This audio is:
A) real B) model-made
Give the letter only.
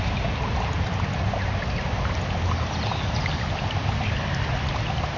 A